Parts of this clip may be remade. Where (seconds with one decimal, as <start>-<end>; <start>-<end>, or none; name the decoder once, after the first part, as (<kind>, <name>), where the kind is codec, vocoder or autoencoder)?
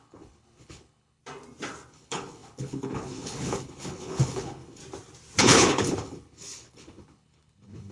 0.0-1.2 (codec, HILCodec); 1.9-4.8; 5.4-7.9